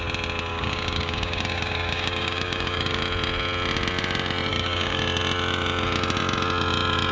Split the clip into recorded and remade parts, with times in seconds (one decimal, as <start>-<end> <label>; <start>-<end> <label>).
0.0-0.5 recorded; 0.5-3.0 remade; 3.0-4.5 recorded; 4.5-5.0 remade; 5.0-7.1 recorded